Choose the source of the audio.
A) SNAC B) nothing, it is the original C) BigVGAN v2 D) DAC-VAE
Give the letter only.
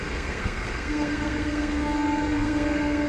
A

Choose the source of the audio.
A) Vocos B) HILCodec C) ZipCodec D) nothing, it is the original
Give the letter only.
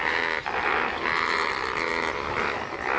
D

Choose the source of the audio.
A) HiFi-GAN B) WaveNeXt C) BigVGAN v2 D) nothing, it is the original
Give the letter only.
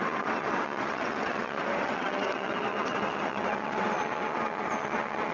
B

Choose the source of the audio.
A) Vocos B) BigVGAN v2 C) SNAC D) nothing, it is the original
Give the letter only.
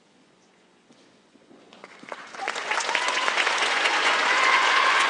A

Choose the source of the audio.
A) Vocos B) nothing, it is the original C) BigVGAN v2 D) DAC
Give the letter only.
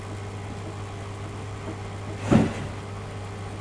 B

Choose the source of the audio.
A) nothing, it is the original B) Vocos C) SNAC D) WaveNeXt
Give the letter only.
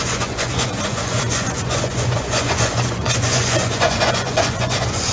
B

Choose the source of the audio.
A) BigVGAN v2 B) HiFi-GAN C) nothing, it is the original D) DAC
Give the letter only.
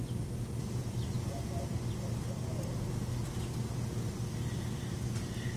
C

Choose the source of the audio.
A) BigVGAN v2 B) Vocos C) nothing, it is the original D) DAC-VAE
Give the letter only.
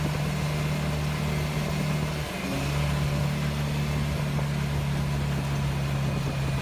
C